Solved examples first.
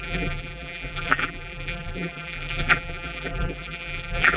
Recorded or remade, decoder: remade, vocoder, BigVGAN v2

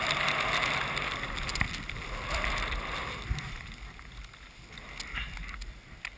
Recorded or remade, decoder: recorded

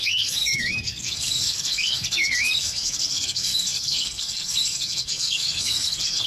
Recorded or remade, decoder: remade, codec, SNAC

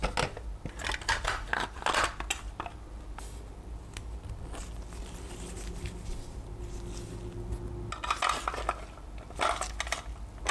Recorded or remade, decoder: recorded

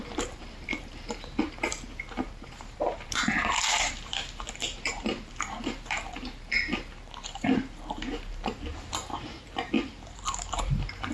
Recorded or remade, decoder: remade, vocoder, BigVGAN v2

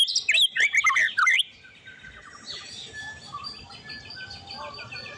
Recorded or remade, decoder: recorded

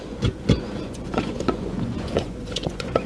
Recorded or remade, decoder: remade, vocoder, Vocos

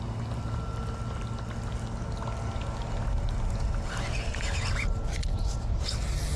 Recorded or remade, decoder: recorded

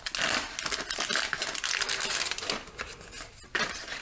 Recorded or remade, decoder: recorded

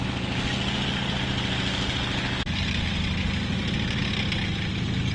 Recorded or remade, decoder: recorded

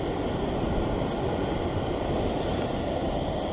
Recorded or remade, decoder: recorded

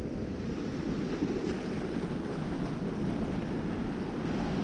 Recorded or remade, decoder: recorded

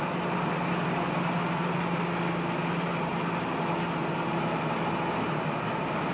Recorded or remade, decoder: recorded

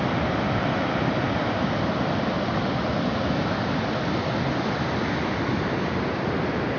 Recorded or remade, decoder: recorded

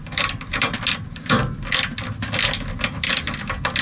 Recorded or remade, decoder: recorded